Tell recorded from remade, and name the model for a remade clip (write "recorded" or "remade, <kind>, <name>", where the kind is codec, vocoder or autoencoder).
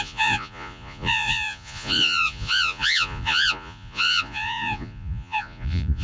remade, vocoder, Vocos